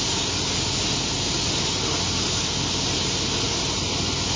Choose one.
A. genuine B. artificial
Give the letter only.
A